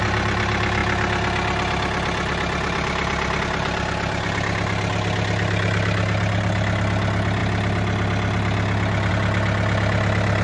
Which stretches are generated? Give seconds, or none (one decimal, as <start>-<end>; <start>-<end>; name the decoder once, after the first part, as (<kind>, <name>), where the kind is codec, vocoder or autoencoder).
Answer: none